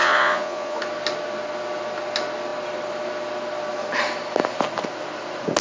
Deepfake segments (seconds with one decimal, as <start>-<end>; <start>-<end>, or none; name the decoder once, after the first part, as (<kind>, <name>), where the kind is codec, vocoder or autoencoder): 0.0-0.8 (vocoder, Vocos)